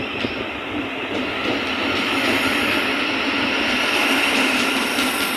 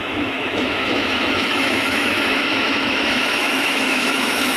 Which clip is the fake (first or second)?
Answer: second